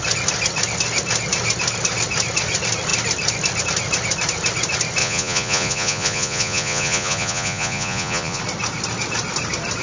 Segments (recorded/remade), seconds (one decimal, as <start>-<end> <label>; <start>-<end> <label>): 0.0-5.0 recorded; 5.0-8.4 remade; 8.4-9.8 recorded